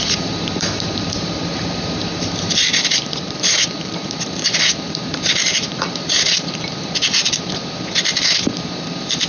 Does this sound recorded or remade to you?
remade